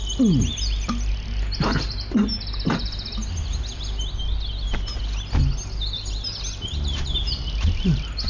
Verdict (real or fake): real